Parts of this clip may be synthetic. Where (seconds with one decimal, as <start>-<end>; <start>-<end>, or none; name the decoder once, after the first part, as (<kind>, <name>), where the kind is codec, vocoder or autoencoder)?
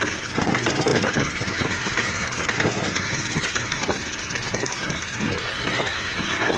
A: 0.0-6.6 (codec, SNAC)